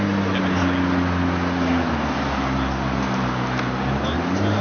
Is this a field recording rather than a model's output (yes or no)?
yes